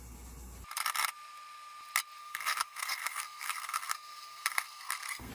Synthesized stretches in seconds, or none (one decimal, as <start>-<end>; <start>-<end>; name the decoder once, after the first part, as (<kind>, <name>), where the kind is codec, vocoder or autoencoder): 2.2-5.3 (codec, SNAC)